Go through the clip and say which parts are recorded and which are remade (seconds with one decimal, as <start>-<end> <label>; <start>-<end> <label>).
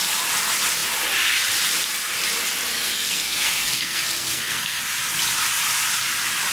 0.0-2.7 recorded; 2.7-4.8 remade; 4.8-6.5 recorded